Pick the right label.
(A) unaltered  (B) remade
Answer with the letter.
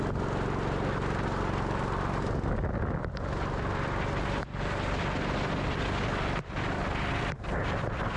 A